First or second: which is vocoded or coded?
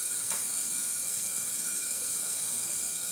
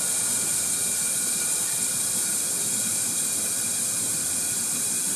first